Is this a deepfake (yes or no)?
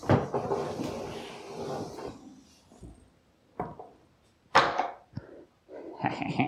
no